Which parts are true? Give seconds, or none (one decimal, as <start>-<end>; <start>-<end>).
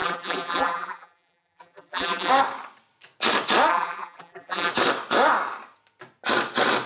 2.3-3.7; 4.7-6.9